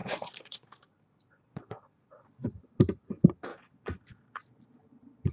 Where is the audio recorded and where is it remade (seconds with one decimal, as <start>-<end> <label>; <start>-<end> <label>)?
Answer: 0.0-2.5 remade; 2.5-3.5 recorded; 3.5-5.3 remade